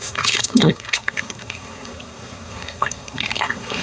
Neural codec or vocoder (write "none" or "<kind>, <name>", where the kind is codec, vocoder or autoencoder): codec, SNAC